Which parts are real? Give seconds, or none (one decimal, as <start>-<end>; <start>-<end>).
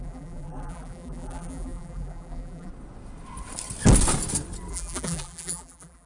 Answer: 2.7-4.7